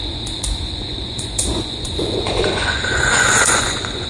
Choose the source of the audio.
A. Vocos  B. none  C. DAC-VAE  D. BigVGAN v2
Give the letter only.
A